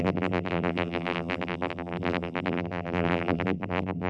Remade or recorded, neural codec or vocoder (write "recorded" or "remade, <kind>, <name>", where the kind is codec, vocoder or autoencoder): remade, vocoder, BigVGAN v2